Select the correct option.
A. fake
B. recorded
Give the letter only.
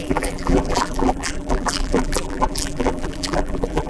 A